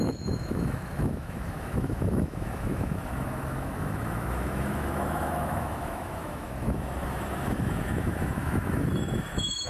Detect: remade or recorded remade